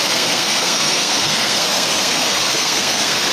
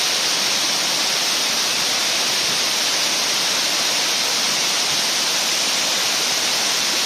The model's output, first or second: first